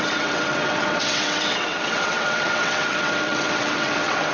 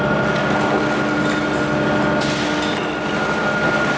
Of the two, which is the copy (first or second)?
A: first